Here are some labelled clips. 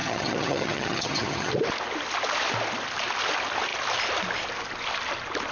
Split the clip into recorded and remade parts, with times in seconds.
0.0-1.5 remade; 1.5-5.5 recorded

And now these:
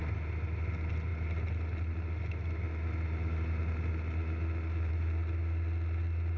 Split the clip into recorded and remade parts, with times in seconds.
0.0-6.4 recorded

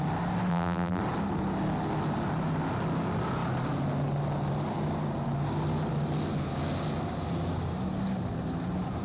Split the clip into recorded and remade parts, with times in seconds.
0.0-0.5 recorded; 0.5-1.0 remade; 1.0-9.0 recorded

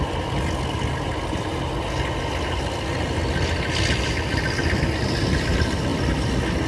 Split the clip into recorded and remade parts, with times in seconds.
0.0-6.7 recorded

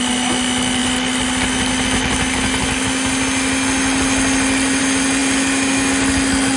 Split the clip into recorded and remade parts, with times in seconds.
0.0-6.6 recorded